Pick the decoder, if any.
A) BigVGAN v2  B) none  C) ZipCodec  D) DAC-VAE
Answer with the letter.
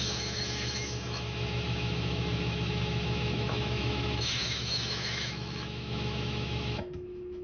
D